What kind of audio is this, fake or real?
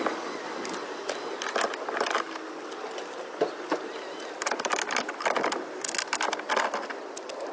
real